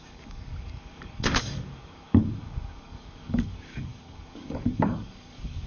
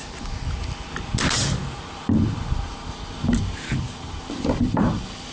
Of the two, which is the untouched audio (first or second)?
second